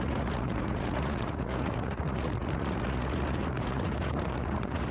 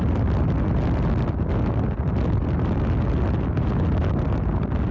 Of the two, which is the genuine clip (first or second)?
second